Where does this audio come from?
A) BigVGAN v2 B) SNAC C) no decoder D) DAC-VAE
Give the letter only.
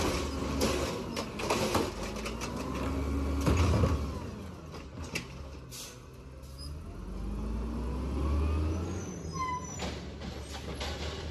C